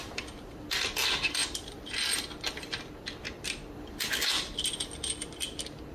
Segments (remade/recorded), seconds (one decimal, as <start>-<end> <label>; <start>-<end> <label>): 0.0-5.9 recorded